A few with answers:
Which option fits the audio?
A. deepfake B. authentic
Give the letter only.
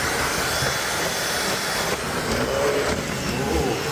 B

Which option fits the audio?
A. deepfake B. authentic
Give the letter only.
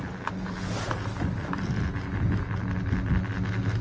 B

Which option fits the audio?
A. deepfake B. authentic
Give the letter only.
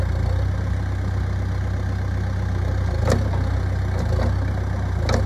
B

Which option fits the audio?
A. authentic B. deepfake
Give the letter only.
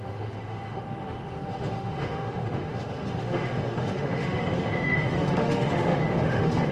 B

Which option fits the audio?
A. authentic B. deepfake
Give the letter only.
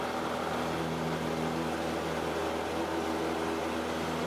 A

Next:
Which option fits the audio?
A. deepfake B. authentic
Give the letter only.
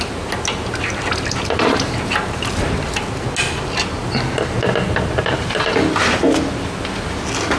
B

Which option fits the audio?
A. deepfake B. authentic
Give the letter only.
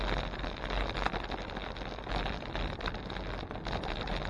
B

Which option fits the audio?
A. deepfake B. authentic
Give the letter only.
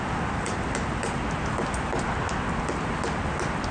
B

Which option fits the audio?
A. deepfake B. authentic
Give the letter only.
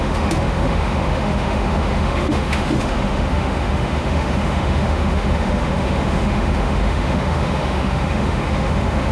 A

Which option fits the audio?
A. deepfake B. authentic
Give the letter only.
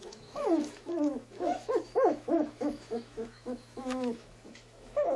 A